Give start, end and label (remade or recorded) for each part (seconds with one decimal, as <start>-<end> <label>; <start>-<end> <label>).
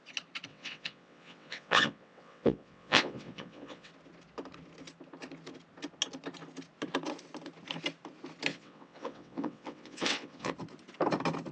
0.0-0.5 recorded; 0.5-3.9 remade; 3.9-8.5 recorded; 8.5-10.5 remade; 10.5-11.5 recorded